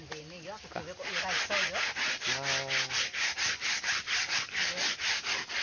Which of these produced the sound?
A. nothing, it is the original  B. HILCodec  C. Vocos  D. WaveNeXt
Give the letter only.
A